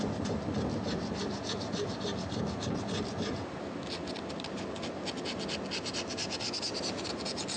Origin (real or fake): real